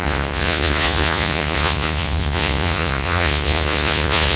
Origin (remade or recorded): remade